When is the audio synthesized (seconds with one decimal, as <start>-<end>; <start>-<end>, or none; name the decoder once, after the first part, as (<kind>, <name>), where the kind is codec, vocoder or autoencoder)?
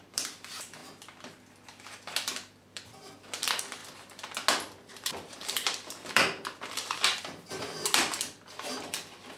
0.0-0.8 (vocoder, BigVGAN v2); 1.8-3.8; 4.9-9.4